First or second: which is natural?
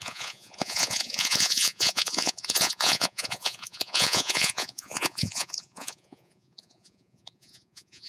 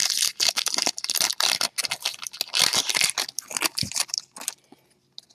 second